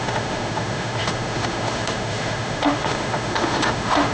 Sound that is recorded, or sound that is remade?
remade